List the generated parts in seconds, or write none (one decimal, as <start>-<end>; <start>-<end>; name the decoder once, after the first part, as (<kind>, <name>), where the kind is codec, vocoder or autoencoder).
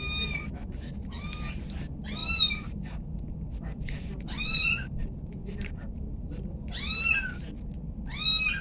0.6-1.2 (vocoder, BigVGAN v2); 2.2-7.4